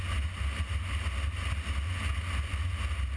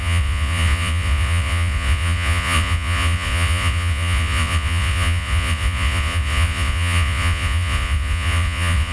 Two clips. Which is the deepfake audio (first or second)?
second